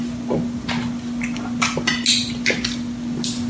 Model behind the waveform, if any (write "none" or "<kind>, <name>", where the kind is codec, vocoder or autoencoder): none